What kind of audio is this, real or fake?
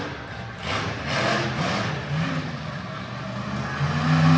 real